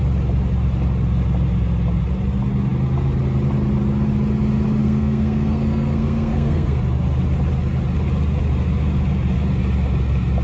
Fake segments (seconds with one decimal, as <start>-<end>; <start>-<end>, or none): 4.8-6.8